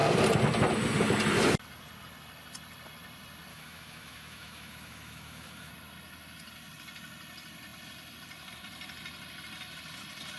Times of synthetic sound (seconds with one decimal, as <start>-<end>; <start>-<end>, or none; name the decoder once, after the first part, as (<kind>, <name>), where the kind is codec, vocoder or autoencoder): 3.5-5.7 (autoencoder, DAC-VAE)